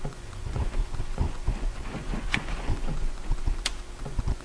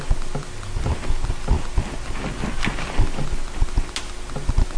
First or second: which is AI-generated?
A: first